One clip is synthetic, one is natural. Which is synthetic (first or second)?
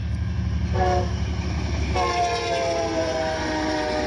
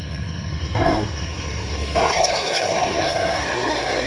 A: second